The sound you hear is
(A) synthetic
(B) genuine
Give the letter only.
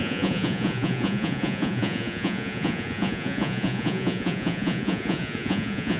A